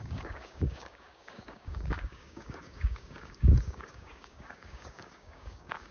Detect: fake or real fake